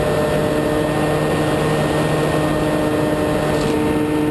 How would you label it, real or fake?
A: real